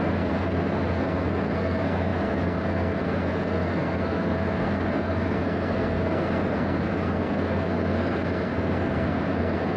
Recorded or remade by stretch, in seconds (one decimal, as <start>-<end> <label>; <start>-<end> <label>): 0.0-9.8 remade